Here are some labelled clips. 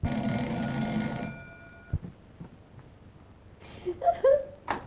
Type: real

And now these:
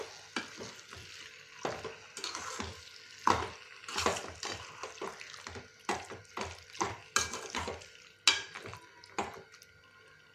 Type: real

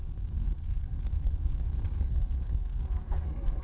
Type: fake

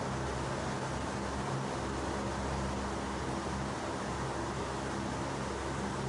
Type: real